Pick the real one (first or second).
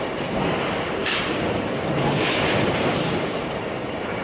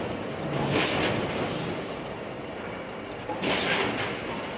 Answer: second